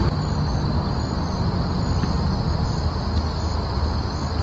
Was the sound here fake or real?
real